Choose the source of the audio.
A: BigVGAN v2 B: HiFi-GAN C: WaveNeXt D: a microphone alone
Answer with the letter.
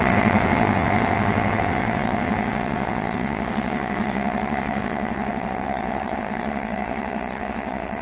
C